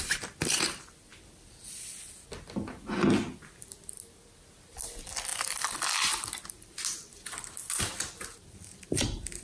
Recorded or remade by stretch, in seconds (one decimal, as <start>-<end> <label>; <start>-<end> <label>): 0.0-9.4 recorded